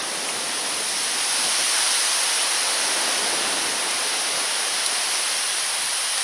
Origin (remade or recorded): remade